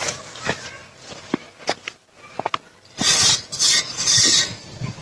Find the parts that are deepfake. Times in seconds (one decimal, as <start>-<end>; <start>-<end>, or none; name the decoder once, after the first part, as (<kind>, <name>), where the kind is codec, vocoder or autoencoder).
none